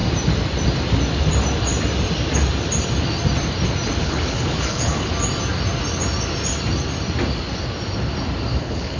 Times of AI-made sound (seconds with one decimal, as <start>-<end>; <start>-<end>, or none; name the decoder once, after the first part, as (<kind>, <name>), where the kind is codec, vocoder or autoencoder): 4.0-5.1 (codec, HILCodec); 8.6-9.0